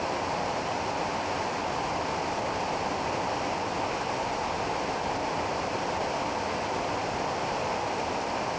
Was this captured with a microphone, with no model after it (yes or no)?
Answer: yes